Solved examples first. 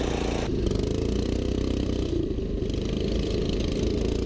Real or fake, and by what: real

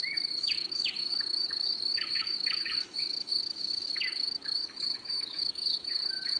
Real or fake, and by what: fake, autoencoder, DAC-VAE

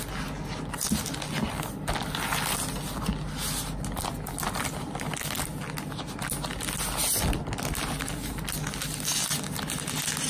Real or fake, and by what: real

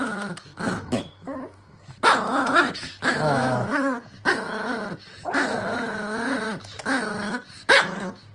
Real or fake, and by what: fake, autoencoder, DAC-VAE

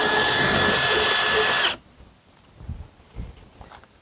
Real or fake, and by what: real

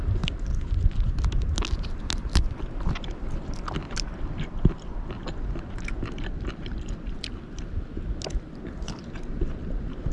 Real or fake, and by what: real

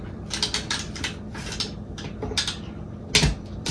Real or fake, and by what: real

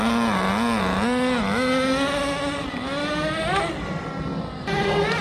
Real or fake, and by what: real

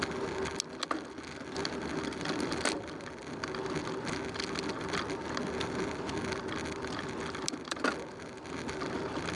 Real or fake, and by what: real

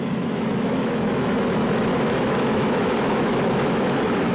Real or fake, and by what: fake, autoencoder, DAC-VAE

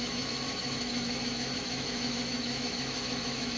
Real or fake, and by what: fake, autoencoder, DAC-VAE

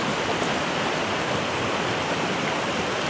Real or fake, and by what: real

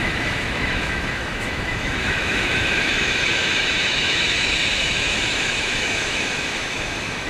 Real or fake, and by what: fake, autoencoder, DAC-VAE